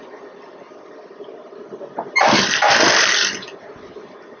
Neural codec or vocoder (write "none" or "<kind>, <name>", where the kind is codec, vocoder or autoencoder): none